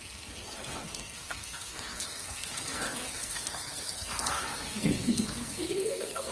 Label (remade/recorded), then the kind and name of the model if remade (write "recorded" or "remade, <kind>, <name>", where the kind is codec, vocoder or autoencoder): remade, codec, SNAC